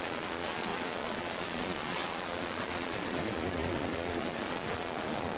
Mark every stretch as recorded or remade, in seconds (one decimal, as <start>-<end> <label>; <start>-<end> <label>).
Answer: 0.0-5.4 remade